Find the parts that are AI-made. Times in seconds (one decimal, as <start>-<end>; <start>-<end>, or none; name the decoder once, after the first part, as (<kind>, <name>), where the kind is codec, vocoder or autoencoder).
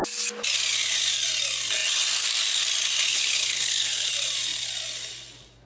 3.1-4.1 (codec, HILCodec)